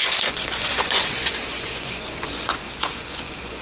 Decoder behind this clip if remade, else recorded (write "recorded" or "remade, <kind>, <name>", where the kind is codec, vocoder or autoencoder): remade, vocoder, Vocos